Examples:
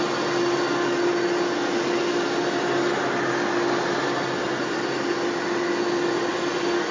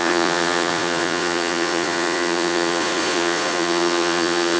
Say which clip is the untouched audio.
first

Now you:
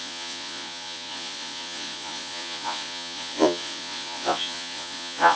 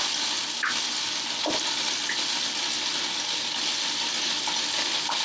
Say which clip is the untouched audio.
second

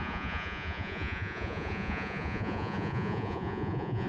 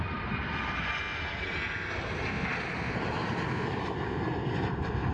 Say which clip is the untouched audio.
second